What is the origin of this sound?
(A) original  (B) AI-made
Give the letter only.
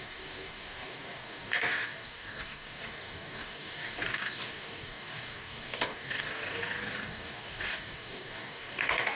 B